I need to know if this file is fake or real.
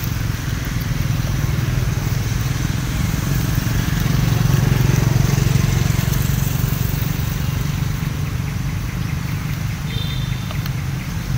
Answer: real